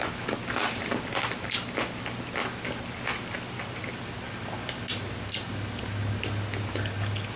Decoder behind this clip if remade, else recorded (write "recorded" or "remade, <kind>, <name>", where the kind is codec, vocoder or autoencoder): recorded